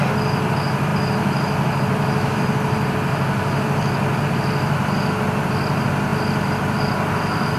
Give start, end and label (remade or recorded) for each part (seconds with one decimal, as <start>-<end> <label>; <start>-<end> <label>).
0.0-7.6 recorded